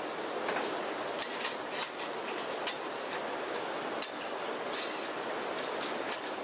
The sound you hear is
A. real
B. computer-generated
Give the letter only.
A